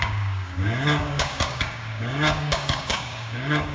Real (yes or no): no